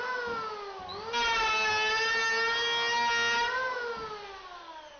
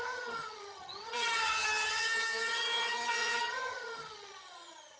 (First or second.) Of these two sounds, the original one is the first